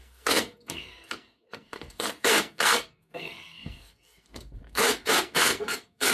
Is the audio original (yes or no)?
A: no